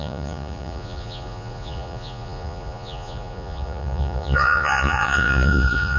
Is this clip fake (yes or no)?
yes